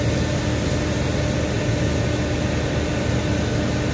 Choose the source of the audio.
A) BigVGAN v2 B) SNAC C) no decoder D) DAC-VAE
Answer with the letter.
C